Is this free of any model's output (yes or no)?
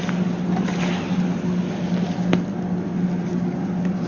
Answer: yes